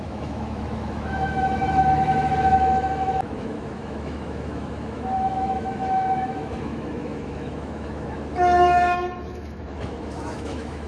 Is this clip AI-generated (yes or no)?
yes